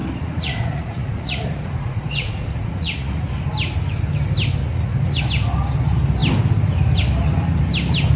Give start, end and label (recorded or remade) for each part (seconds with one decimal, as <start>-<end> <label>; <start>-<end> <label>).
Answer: 0.0-3.2 remade; 3.2-4.6 recorded; 4.6-5.2 remade; 5.2-8.2 recorded